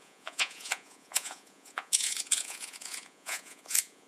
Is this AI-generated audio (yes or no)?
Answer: yes